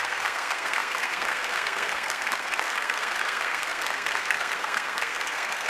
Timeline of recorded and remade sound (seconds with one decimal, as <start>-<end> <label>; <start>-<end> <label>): 0.0-5.7 remade